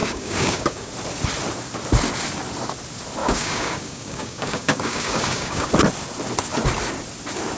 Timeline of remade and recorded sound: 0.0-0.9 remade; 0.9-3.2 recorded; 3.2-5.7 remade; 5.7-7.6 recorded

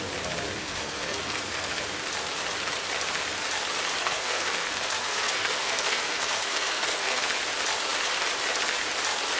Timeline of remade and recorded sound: 0.0-0.6 recorded; 0.6-1.8 remade; 1.8-4.0 recorded; 4.0-7.2 remade; 7.2-9.4 recorded

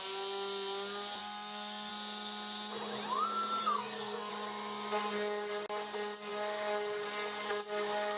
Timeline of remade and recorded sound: 0.0-1.2 recorded; 1.2-1.9 remade; 1.9-3.6 recorded; 3.6-4.3 remade; 4.3-8.2 recorded

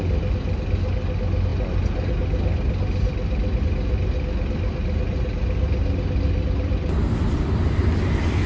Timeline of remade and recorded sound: 0.0-8.5 recorded